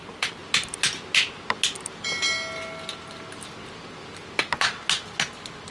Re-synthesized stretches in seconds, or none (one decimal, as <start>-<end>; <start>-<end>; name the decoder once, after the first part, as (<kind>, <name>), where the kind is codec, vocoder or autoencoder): none